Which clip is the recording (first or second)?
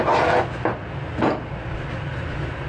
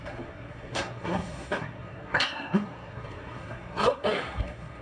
first